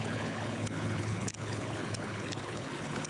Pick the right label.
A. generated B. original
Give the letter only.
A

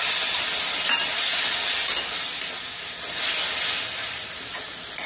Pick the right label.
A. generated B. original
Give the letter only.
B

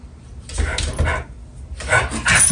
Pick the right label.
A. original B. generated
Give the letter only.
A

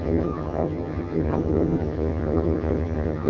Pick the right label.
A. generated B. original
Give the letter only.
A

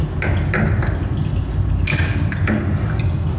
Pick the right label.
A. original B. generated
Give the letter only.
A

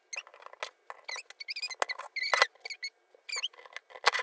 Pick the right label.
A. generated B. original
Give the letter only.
B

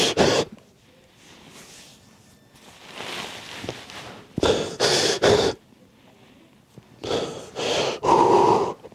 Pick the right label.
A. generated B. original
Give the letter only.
B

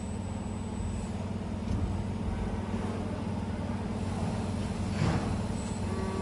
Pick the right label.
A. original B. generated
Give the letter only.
A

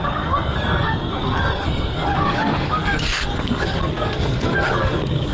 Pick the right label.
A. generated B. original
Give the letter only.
A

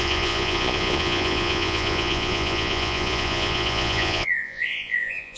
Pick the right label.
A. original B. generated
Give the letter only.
B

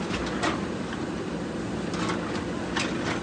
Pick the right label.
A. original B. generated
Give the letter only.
A